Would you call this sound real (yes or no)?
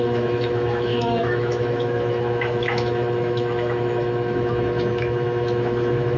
no